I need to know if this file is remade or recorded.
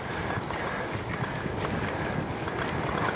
recorded